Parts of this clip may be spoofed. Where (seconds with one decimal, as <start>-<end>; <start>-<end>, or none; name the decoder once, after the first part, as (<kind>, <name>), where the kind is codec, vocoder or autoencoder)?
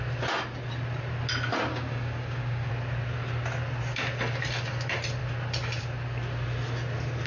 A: 1.7-2.7 (codec, DAC)